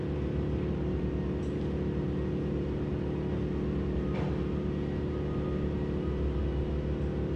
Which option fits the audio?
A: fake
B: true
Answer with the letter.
B